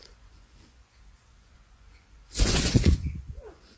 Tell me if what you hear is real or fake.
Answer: fake